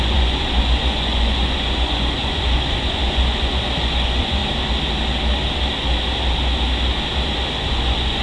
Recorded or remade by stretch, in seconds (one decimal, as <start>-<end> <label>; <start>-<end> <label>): 0.0-4.4 remade; 4.4-7.7 recorded; 7.7-8.2 remade